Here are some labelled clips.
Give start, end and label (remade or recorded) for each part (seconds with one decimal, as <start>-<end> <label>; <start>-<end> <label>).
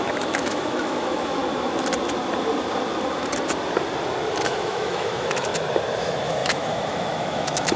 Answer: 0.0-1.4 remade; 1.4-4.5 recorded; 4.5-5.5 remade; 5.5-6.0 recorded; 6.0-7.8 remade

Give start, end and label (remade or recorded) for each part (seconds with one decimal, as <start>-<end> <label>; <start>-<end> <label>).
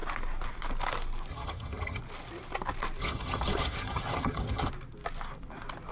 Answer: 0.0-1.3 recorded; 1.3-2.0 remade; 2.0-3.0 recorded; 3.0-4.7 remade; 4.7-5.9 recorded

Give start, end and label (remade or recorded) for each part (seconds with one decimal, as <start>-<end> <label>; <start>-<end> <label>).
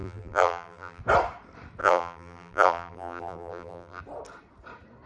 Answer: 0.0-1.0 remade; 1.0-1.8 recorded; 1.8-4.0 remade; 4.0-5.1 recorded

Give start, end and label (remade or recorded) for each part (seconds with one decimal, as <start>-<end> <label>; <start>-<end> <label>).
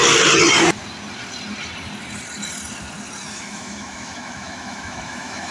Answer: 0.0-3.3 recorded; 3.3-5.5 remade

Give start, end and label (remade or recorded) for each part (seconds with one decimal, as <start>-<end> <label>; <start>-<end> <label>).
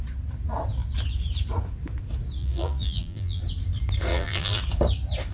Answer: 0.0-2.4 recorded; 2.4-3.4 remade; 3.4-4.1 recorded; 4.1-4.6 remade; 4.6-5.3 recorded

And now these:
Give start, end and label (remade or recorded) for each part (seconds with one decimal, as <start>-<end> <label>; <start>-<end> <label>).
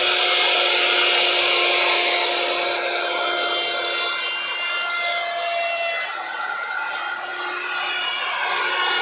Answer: 0.0-9.0 recorded